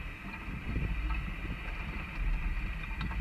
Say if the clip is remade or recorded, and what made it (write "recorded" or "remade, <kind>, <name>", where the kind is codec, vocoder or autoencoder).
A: remade, vocoder, BigVGAN v2